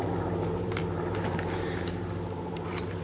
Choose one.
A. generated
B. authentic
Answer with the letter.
A